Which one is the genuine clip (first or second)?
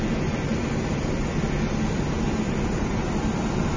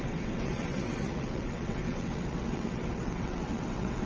first